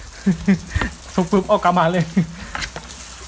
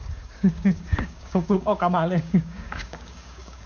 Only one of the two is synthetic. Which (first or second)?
second